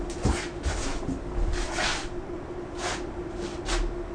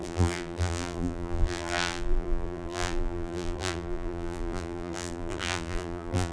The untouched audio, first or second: first